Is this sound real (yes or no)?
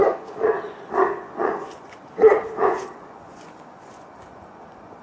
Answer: no